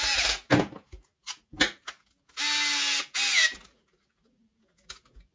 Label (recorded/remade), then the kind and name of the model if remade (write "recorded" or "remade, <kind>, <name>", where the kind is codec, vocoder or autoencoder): recorded